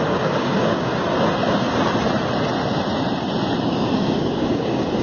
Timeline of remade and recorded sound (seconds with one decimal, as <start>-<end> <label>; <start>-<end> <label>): 0.0-0.9 remade; 0.9-3.6 recorded; 3.6-5.0 remade